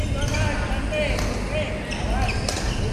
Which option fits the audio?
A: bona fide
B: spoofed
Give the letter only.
A